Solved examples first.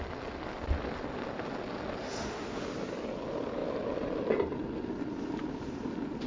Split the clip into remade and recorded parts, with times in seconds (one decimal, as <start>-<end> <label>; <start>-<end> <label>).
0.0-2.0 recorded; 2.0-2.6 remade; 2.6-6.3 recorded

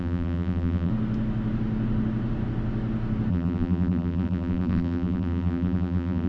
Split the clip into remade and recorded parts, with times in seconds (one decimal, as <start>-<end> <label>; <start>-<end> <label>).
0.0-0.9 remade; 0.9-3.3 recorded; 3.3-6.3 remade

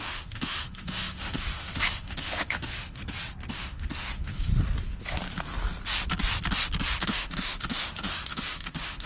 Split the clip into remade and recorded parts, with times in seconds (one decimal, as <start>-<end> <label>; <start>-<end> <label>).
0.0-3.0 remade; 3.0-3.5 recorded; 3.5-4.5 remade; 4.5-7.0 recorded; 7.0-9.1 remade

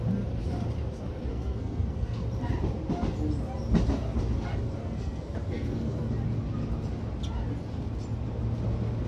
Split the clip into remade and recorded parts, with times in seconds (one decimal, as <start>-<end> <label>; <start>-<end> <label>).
0.0-1.3 recorded; 1.3-2.2 remade; 2.2-4.8 recorded; 4.8-6.1 remade; 6.1-9.1 recorded

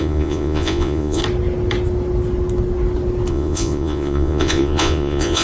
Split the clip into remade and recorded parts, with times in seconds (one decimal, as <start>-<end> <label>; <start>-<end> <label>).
0.0-1.2 remade; 1.2-3.3 recorded; 3.3-5.4 remade